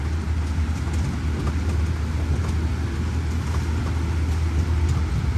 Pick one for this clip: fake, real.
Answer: real